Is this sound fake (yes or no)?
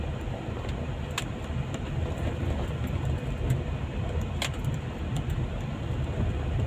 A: no